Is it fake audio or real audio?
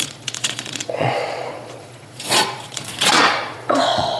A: fake